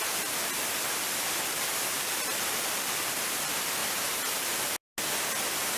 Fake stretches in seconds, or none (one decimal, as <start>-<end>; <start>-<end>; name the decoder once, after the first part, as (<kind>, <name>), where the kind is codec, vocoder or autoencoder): none